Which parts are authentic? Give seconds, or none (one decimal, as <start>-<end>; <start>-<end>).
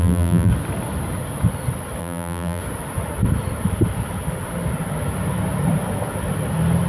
0.5-2.0; 2.6-6.9